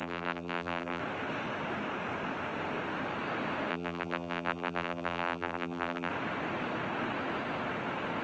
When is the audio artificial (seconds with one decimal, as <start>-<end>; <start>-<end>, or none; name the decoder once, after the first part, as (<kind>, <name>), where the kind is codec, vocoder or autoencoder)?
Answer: 0.0-1.0 (vocoder, BigVGAN v2); 3.7-6.1